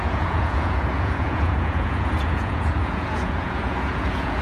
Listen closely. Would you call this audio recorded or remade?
remade